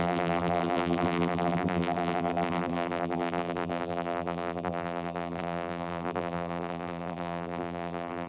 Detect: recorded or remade remade